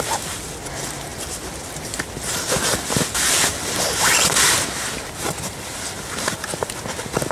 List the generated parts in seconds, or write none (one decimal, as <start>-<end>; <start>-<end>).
none